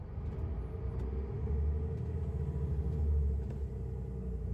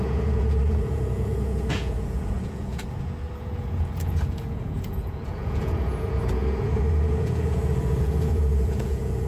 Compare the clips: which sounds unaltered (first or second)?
first